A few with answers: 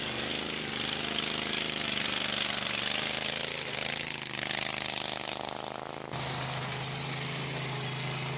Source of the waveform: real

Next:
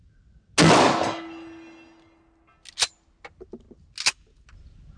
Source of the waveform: real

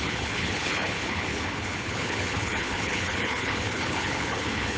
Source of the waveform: fake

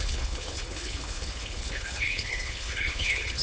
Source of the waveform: fake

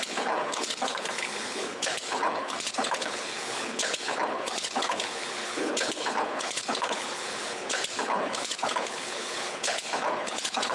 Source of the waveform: fake